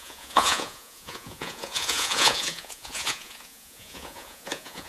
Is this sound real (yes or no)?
no